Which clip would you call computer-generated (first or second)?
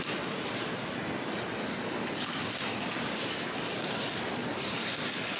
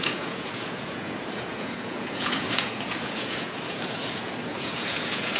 second